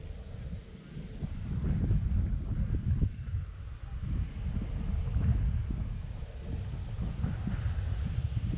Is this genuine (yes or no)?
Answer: yes